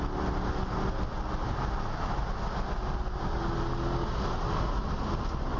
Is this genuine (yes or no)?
yes